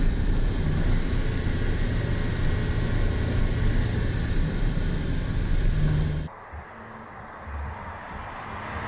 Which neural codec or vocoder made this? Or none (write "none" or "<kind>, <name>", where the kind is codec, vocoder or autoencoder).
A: none